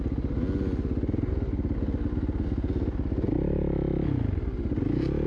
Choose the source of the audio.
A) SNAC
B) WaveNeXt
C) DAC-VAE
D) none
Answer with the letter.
D